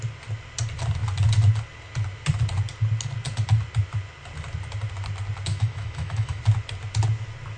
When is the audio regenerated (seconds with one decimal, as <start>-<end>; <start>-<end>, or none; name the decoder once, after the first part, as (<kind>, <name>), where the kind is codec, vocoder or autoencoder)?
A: 5.5-6.4 (autoencoder, DAC-VAE)